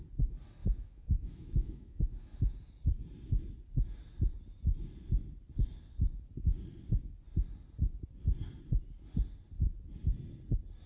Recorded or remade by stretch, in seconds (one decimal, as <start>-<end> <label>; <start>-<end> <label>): 0.0-0.6 recorded; 0.6-2.4 remade; 2.4-10.9 recorded